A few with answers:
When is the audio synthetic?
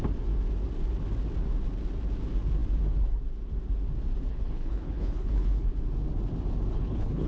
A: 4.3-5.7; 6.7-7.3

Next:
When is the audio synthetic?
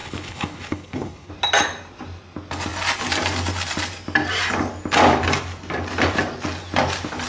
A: 0.0-1.3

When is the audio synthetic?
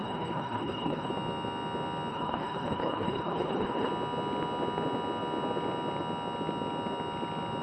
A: 0.0-1.1; 2.1-3.9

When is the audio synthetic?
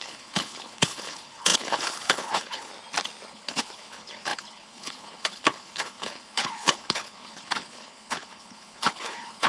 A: 0.0-2.7; 3.3-9.5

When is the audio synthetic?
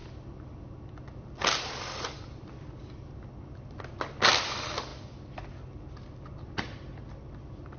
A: none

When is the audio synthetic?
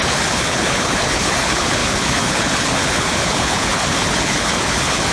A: 0.0-5.1